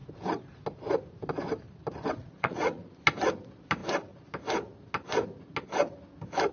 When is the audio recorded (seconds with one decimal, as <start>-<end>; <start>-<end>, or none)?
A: 0.0-2.2; 2.9-6.5